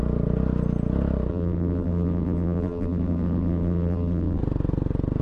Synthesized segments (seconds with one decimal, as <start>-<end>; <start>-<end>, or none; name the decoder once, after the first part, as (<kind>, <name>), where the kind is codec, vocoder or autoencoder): 1.3-4.4 (vocoder, BigVGAN v2)